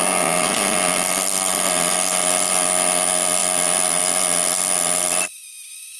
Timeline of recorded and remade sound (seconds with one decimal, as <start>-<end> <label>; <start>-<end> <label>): 0.0-6.0 recorded